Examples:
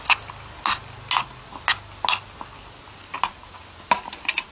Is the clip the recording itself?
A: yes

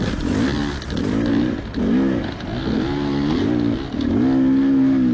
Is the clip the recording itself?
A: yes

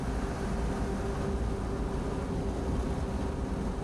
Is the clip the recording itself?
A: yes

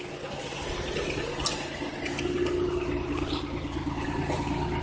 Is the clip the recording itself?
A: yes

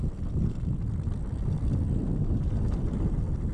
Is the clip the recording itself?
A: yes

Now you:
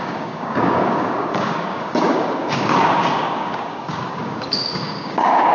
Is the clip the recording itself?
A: no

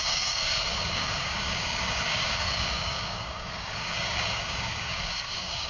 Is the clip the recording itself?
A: no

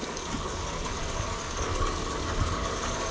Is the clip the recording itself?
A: no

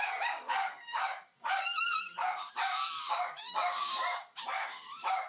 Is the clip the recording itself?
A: no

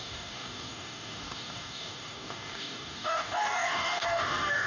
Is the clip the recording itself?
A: no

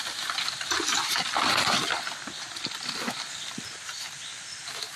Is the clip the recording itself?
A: yes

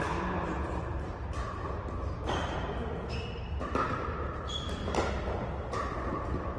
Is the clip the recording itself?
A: yes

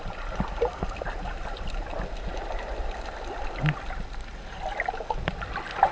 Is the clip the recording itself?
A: yes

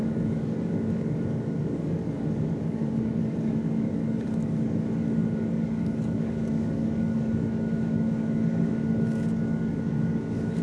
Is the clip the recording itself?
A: no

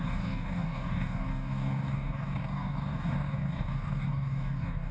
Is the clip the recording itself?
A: no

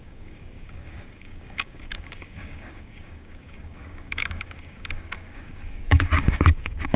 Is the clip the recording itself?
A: no